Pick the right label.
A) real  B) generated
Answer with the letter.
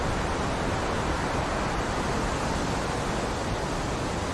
A